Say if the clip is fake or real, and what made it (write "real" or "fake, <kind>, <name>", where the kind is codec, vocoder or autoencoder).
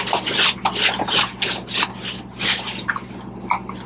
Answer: real